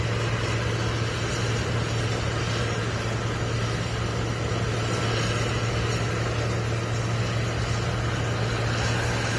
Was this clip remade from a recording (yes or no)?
no